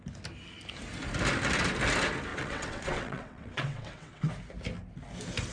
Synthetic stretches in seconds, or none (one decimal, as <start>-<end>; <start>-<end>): 2.3-4.3